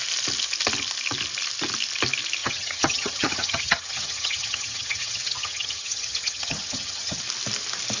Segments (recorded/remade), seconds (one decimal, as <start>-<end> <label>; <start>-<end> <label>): 0.0-2.4 recorded; 2.4-7.2 remade; 7.2-8.0 recorded